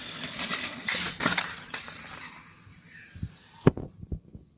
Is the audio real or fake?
real